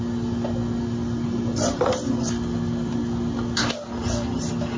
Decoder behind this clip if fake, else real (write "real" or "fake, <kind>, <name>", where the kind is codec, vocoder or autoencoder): real